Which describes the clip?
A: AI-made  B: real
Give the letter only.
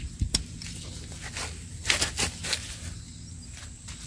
B